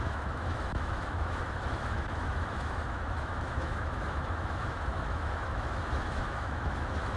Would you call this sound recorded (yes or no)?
no